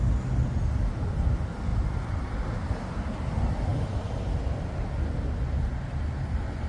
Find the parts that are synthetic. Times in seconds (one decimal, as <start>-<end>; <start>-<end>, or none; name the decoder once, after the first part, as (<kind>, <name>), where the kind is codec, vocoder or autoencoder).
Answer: none